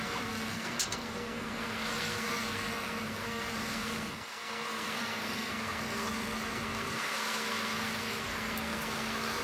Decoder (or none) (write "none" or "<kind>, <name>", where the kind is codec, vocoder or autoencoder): codec, SNAC